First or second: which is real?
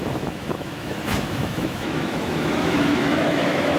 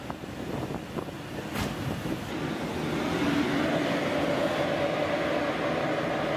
second